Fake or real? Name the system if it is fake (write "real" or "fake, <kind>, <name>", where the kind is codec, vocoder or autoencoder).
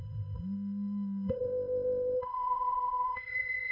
fake, codec, ZipCodec